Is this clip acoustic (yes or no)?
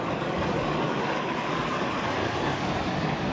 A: no